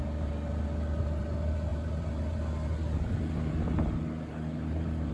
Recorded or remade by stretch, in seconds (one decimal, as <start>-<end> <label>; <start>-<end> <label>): 0.0-5.1 recorded